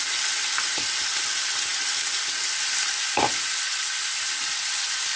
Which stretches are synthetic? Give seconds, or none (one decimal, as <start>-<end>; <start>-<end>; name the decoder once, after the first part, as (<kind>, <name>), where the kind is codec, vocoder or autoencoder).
none